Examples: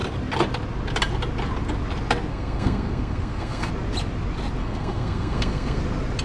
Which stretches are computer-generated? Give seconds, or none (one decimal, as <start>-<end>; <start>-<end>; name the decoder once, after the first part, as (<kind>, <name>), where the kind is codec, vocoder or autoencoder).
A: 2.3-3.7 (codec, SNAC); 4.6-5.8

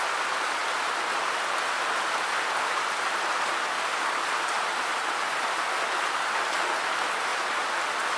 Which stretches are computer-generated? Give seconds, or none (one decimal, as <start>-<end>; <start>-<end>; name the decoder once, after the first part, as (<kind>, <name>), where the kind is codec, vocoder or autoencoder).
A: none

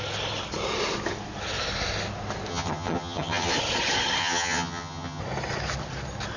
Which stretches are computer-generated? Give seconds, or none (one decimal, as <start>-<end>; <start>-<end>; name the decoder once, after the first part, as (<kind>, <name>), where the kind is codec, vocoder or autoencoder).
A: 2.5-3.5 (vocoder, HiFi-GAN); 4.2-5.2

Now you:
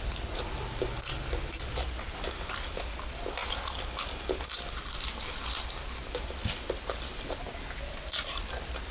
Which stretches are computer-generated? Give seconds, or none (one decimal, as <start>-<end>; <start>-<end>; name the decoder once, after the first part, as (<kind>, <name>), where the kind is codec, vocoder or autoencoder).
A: none

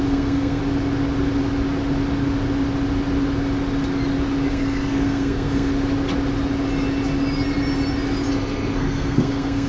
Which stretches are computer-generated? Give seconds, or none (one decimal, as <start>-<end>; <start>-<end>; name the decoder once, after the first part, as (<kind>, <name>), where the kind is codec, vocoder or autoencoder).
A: 0.0-0.6 (codec, SNAC); 4.5-5.7; 8.3-9.7

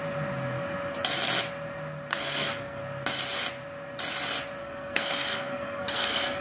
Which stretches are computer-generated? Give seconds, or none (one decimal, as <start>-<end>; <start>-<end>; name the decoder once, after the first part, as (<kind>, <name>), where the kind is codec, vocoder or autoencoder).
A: 2.1-2.8 (codec, SNAC); 4.6-6.4

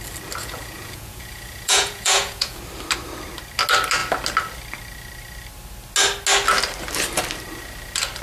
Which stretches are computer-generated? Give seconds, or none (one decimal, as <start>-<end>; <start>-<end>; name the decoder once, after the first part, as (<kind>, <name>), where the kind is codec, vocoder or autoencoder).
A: 0.4-2.6 (vocoder, Vocos)